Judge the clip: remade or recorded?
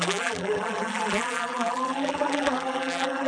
remade